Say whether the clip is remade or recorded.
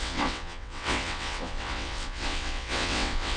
remade